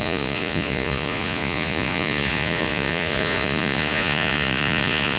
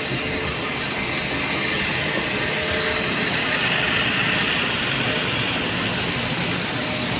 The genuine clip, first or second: second